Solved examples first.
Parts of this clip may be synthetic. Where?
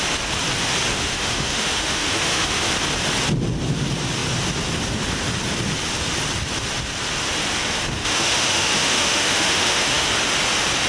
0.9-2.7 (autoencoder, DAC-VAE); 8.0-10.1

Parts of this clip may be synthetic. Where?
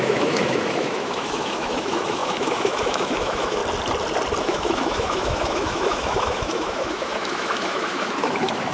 0.0-3.6 (autoencoder, DAC-VAE); 4.4-8.7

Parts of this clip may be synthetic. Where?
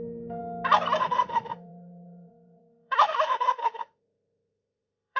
0.0-0.4 (autoencoder, DAC-VAE); 1.0-5.2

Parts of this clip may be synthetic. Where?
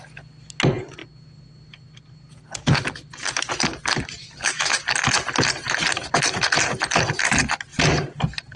4.2-4.8 (autoencoder, DAC-VAE)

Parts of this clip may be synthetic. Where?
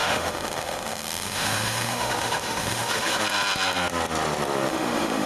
0.0-3.2 (autoencoder, DAC-VAE); 4.7-5.3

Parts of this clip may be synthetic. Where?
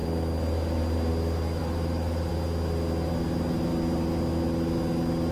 1.6-2.3 (autoencoder, DAC-VAE)